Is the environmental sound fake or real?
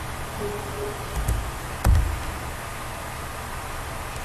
real